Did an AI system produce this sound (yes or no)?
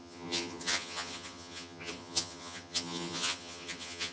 yes